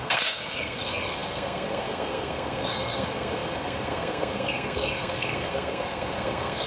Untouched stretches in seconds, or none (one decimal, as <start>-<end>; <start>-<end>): none